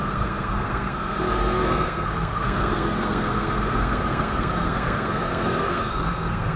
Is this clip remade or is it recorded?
remade